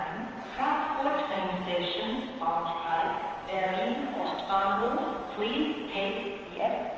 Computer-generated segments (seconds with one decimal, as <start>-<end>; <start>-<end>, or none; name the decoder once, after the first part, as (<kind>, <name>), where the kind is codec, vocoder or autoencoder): 0.8-1.4 (codec, DAC); 2.8-5.3